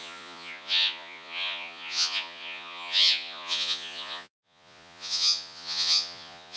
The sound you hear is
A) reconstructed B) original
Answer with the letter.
A